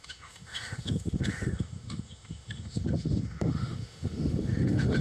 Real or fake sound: fake